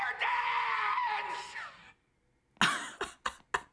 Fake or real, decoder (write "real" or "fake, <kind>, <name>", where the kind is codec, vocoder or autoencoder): real